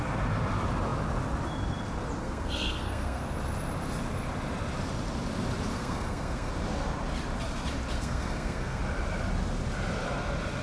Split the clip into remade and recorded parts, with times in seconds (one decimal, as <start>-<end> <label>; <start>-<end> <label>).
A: 0.0-2.2 recorded; 2.2-3.2 remade; 3.2-5.7 recorded; 5.7-6.5 remade; 6.5-7.9 recorded; 7.9-8.8 remade; 8.8-10.6 recorded